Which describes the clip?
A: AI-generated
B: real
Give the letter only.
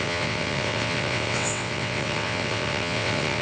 A